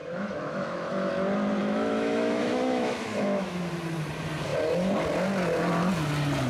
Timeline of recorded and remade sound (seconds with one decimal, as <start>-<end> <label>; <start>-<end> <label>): 0.0-1.1 remade; 1.1-1.6 recorded; 1.6-3.6 remade; 3.6-6.5 recorded